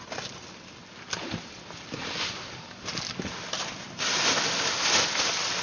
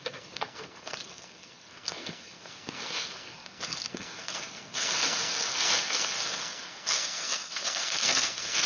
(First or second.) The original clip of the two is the first